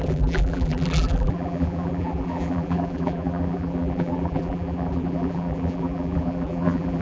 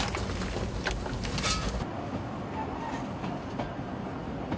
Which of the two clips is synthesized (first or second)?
first